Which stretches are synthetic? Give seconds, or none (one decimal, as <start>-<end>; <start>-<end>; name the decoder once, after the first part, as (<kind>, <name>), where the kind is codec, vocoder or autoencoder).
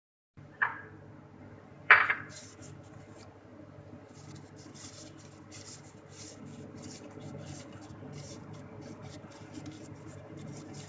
0.0-0.7 (vocoder, BigVGAN v2); 1.4-3.5; 7.0-10.9